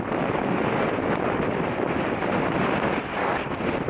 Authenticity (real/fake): fake